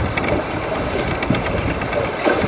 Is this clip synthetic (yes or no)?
no